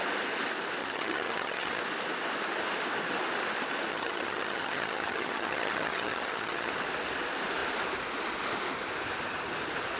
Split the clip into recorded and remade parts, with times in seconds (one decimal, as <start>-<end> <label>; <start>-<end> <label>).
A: 0.0-0.8 recorded; 0.8-1.8 remade; 1.8-3.9 recorded; 3.9-6.7 remade; 6.7-10.0 recorded

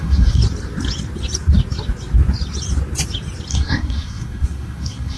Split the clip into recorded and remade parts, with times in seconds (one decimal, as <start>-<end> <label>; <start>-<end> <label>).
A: 0.0-0.4 remade; 0.4-3.5 recorded; 3.5-5.2 remade

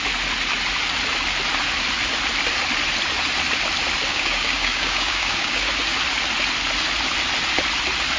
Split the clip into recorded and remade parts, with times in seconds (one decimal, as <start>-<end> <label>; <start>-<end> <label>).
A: 0.0-4.1 recorded; 4.1-5.6 remade; 5.6-8.2 recorded